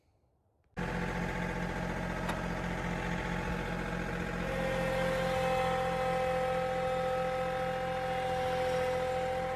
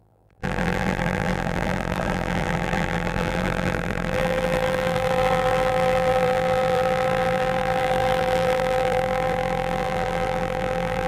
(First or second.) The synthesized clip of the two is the second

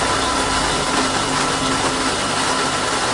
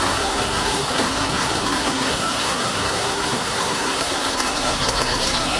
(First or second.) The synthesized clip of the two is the second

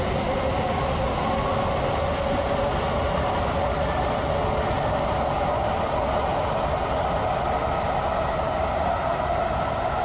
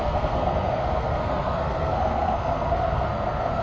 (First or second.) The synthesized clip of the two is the second